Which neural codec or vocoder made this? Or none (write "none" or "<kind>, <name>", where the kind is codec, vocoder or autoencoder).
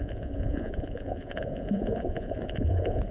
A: vocoder, Vocos